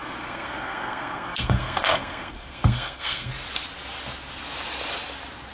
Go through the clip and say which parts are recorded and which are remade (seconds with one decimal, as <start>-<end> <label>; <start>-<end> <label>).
0.0-3.3 remade; 3.3-5.5 recorded